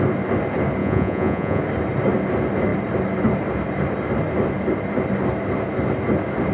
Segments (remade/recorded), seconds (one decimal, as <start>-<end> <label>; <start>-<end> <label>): 0.0-0.8 recorded; 0.8-1.6 remade; 1.6-6.5 recorded